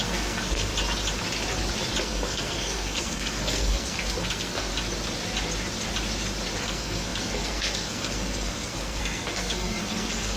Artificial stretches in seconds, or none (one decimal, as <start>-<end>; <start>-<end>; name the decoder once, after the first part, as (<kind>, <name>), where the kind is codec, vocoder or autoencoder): 0.0-0.7 (codec, SNAC); 2.0-4.7; 6.6-10.4